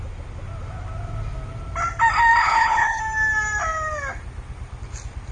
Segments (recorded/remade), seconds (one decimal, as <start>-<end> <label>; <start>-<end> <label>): 0.0-2.4 recorded; 2.4-3.0 remade; 3.0-5.3 recorded